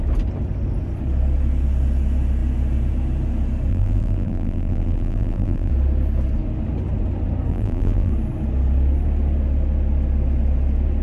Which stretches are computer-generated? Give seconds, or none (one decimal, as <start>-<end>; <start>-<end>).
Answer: 3.7-5.7; 7.5-8.1